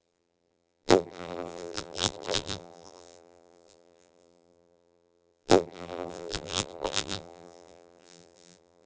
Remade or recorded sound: remade